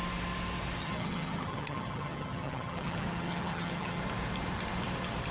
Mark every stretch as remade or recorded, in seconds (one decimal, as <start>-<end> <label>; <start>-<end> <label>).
0.0-0.8 recorded; 0.8-4.0 remade; 4.0-5.3 recorded